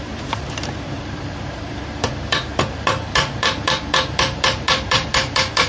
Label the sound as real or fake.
fake